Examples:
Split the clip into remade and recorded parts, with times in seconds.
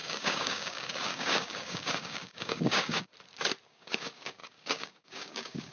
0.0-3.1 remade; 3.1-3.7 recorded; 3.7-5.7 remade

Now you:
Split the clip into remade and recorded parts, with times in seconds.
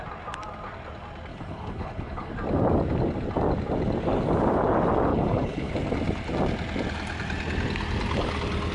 0.0-1.3 recorded; 1.3-2.3 remade; 2.3-5.1 recorded; 5.1-5.7 remade; 5.7-8.7 recorded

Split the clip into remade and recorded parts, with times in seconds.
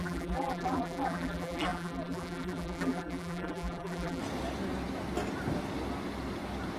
0.0-4.2 remade; 4.2-6.8 recorded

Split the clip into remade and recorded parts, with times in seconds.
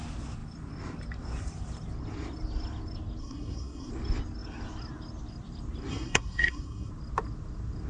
0.0-3.2 recorded; 3.2-3.9 remade; 3.9-5.9 recorded; 5.9-6.9 remade; 6.9-7.9 recorded